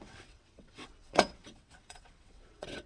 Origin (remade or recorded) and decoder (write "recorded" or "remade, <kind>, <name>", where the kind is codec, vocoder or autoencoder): remade, vocoder, WaveNeXt